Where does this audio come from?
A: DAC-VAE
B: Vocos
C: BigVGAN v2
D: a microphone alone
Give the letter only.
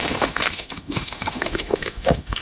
A